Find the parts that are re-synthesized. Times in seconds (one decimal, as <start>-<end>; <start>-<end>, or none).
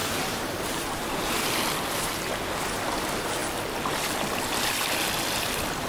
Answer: 0.0-1.5